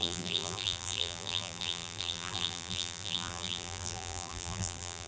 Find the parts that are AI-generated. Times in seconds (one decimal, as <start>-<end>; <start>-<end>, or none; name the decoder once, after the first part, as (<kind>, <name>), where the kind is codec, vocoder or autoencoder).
0.0-5.1 (vocoder, BigVGAN v2)

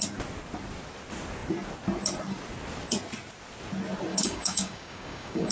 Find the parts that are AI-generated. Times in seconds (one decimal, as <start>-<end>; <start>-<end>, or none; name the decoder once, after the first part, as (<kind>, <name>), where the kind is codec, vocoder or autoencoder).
4.1-5.5 (codec, DAC)

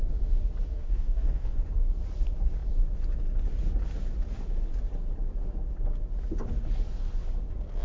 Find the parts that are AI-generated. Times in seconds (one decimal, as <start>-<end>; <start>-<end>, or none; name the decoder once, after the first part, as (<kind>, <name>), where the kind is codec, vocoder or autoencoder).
0.7-1.6 (codec, DAC)

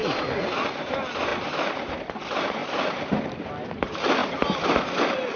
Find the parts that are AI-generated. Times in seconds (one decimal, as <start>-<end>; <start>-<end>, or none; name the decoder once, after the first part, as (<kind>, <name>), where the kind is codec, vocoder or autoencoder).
0.0-0.9 (vocoder, BigVGAN v2); 1.3-1.9; 2.6-3.5

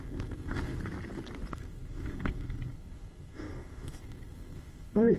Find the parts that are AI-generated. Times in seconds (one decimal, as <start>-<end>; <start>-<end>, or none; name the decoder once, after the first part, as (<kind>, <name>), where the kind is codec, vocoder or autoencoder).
0.0-0.8 (codec, SNAC); 1.5-5.2

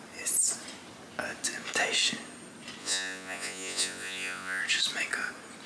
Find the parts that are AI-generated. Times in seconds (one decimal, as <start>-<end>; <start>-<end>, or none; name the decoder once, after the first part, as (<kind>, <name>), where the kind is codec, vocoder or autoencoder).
2.8-4.6 (vocoder, Vocos)

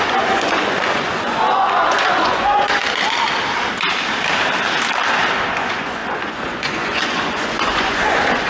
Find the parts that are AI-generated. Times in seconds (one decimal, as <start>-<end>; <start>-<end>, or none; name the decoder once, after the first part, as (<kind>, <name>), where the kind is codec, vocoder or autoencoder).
0.0-2.8 (vocoder, Vocos); 5.5-8.5